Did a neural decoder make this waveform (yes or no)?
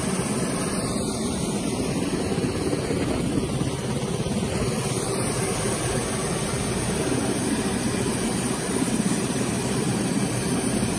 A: no